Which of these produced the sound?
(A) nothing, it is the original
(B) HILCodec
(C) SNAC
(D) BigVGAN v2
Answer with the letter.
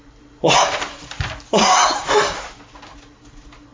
A